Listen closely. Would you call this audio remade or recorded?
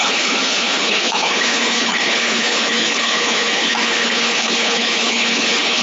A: remade